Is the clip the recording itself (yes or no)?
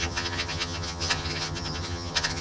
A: no